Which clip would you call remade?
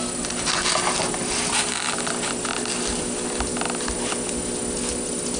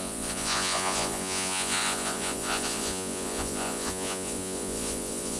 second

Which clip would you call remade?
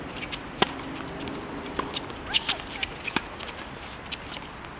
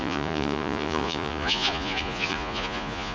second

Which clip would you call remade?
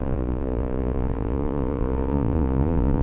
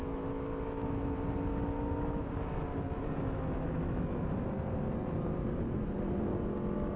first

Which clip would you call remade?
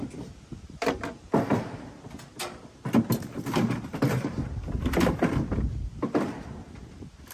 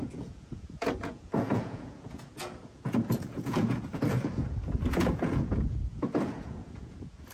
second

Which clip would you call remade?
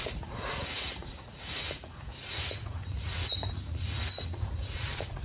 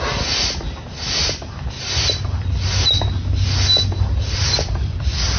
first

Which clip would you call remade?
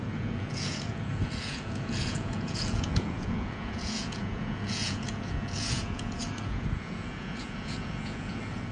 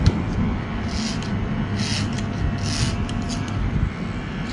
first